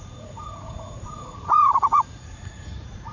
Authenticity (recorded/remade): remade